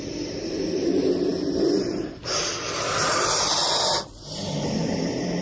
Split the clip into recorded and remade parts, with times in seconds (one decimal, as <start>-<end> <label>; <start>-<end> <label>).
0.0-5.4 recorded